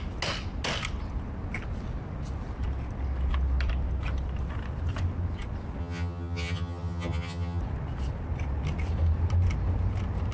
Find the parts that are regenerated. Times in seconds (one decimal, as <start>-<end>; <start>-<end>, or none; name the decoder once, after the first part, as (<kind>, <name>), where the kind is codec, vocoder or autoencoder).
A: 5.8-7.6 (vocoder, HiFi-GAN)